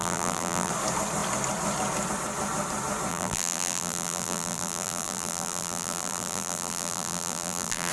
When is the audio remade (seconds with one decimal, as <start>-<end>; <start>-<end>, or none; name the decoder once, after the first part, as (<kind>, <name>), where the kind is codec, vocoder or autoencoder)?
0.0-0.7 (vocoder, BigVGAN v2); 3.1-7.9